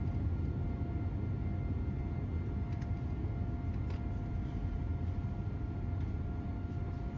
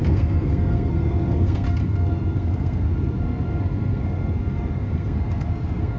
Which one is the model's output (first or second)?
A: second